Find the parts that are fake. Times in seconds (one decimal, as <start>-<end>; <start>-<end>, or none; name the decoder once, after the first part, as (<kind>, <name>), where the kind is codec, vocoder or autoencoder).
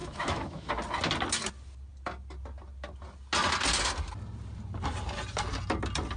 0.0-0.7 (autoencoder, DAC-VAE)